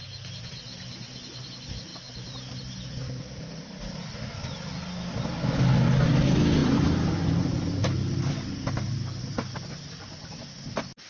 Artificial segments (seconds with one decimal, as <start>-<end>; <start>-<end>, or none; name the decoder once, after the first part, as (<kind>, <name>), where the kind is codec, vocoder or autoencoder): 1.9-2.6 (vocoder, BigVGAN v2); 6.6-7.4